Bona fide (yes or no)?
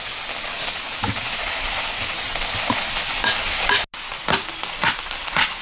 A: yes